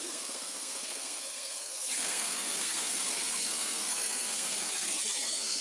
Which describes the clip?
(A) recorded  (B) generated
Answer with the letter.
B